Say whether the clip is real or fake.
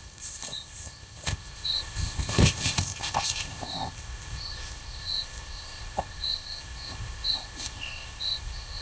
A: fake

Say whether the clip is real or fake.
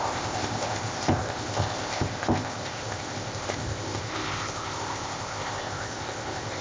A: fake